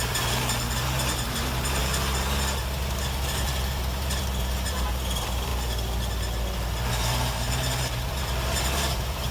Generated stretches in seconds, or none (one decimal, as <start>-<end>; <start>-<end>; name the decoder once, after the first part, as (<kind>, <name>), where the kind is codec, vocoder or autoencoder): 0.0-1.8 (vocoder, BigVGAN v2); 3.8-5.5; 6.9-9.3